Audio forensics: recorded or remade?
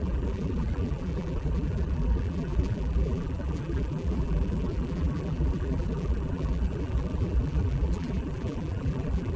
remade